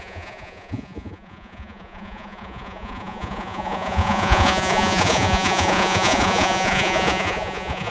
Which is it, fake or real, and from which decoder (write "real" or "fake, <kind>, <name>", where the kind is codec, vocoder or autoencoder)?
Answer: fake, vocoder, Vocos